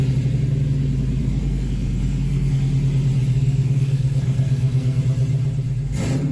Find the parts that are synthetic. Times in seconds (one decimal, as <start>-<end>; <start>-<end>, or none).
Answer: 1.2-2.6; 3.3-5.0